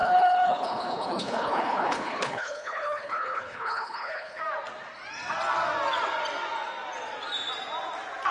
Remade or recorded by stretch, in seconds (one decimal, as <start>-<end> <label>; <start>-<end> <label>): 0.0-4.4 remade; 4.4-8.3 recorded